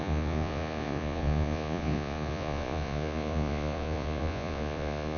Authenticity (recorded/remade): remade